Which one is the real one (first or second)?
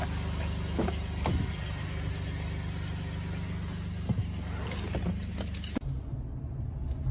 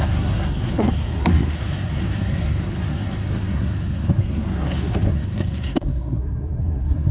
first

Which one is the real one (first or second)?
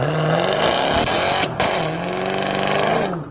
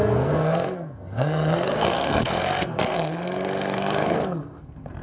first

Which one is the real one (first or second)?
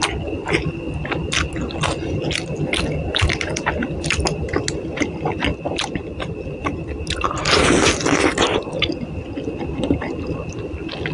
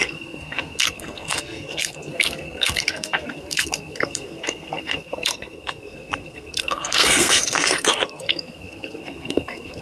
first